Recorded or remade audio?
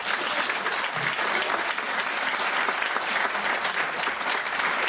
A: recorded